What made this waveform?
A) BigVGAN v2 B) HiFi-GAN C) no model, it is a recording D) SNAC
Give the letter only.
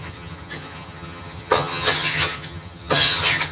B